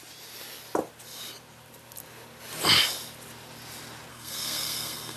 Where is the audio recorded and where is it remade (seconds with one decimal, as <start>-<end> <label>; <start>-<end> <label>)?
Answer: 0.0-4.1 recorded; 4.1-5.2 remade